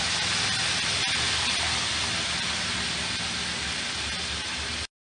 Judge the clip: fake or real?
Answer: real